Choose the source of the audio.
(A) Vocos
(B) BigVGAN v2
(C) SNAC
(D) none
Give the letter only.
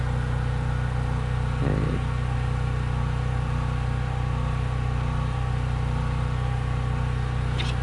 D